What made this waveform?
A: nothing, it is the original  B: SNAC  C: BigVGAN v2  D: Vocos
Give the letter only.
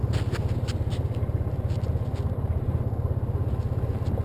A